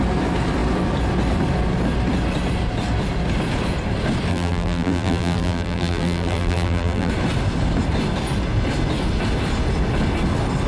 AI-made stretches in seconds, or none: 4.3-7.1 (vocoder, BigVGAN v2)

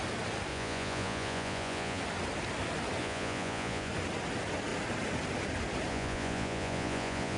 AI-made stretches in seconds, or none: 0.5-2.0 (vocoder, Vocos); 3.0-3.9; 5.9-7.4

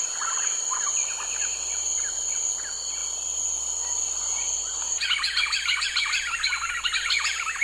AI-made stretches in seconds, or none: none

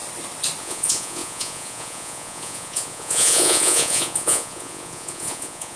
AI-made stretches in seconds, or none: 0.6-5.8 (vocoder, Vocos)

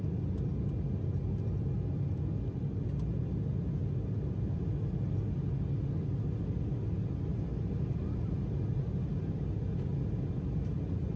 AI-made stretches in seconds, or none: none